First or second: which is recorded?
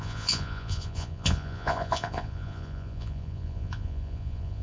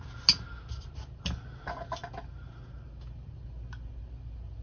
second